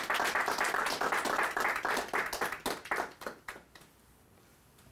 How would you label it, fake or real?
real